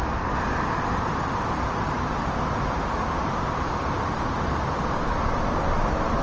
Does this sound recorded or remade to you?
recorded